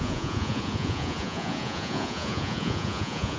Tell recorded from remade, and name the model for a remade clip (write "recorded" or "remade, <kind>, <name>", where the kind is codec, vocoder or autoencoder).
remade, vocoder, Vocos